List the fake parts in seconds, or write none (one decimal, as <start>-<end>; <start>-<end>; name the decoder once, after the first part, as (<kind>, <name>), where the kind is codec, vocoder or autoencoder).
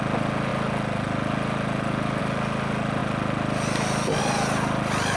none